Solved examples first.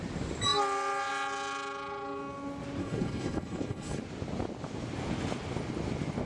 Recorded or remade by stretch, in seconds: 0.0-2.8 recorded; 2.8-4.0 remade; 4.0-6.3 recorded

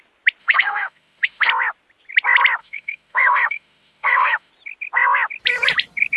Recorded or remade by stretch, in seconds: 0.0-0.4 recorded; 0.4-1.5 remade; 1.5-2.6 recorded; 2.6-4.5 remade; 4.5-6.2 recorded

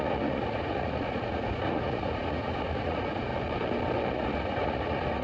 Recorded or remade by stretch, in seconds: 0.0-3.3 remade; 3.3-4.1 recorded; 4.1-5.2 remade